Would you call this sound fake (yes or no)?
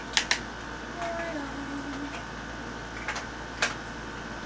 no